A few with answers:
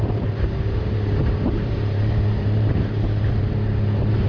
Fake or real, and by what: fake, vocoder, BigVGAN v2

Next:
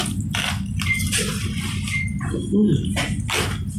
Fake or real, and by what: real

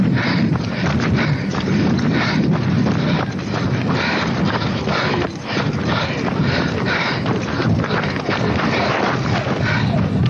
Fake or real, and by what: fake, vocoder, BigVGAN v2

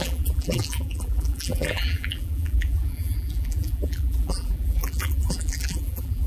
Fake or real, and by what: fake, vocoder, BigVGAN v2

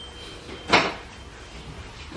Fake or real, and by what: real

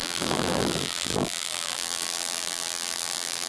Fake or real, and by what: fake, vocoder, BigVGAN v2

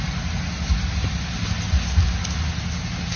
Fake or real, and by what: real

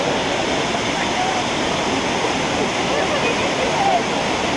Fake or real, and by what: real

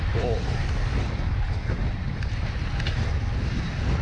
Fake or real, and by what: real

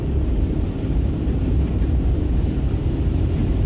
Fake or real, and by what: fake, vocoder, BigVGAN v2